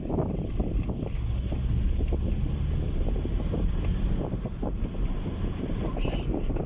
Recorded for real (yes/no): yes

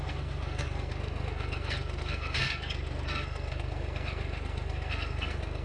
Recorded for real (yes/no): no